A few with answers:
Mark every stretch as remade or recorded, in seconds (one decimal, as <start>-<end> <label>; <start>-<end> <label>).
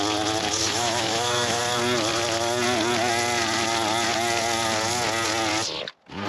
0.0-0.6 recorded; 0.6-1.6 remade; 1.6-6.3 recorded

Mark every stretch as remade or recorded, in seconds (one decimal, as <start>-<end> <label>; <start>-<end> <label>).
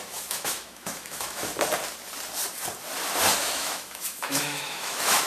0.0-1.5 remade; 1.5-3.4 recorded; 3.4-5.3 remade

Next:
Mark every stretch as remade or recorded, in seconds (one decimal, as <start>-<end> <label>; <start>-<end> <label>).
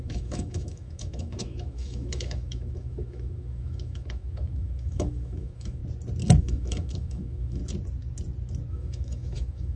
0.0-5.8 remade; 5.8-6.4 recorded; 6.4-7.6 remade; 7.6-8.7 recorded; 8.7-9.8 remade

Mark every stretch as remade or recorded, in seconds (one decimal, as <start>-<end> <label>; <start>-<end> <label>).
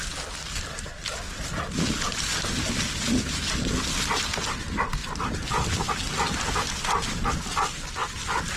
0.0-8.6 recorded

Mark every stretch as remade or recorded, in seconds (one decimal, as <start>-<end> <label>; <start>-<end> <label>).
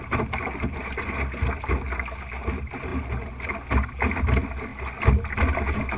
0.0-6.0 recorded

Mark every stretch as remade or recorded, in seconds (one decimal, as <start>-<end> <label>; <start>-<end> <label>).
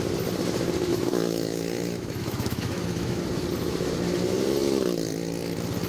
0.0-0.9 recorded; 0.9-3.2 remade; 3.2-5.9 recorded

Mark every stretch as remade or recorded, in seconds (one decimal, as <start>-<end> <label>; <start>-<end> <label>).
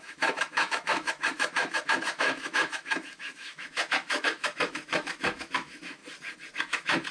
0.0-6.0 remade; 6.0-6.6 recorded; 6.6-7.1 remade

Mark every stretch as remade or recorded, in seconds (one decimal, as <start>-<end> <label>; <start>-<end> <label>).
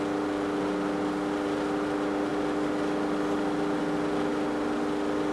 0.0-5.3 recorded